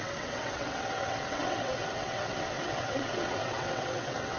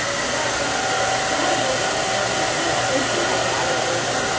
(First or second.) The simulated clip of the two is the first